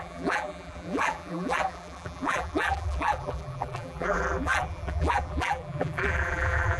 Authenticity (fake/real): fake